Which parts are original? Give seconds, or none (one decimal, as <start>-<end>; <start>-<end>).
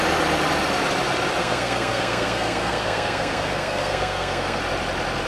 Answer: 0.0-1.4; 4.6-5.3